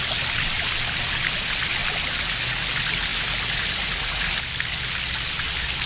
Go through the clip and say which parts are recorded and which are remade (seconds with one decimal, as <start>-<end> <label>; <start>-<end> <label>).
0.0-5.9 recorded